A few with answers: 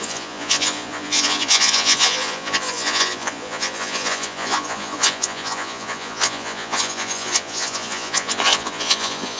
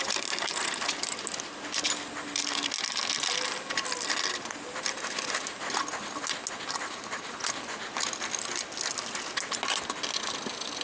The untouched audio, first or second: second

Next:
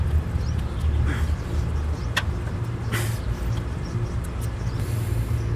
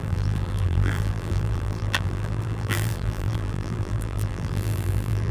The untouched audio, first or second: first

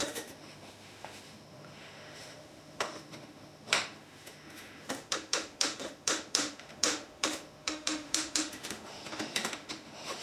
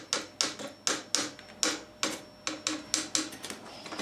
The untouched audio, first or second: second